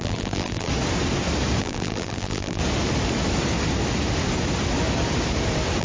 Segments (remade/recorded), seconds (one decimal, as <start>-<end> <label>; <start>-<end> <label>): 0.0-0.7 remade; 0.7-1.6 recorded; 1.6-2.6 remade; 2.6-5.8 recorded